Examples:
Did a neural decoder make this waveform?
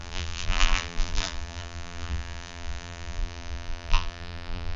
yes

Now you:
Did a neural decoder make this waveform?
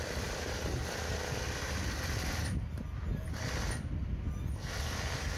no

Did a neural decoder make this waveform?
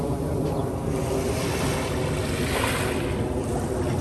no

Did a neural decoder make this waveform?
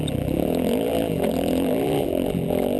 yes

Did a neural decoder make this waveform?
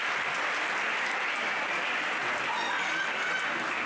no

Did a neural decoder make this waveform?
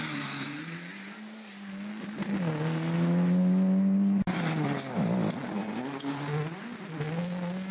no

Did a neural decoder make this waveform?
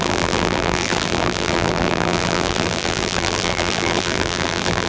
yes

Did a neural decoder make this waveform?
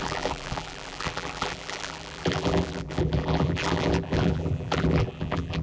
yes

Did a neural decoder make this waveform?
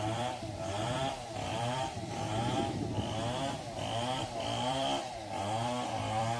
yes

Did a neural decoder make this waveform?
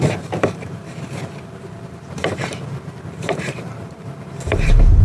yes